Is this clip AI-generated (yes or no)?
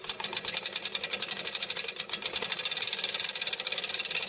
no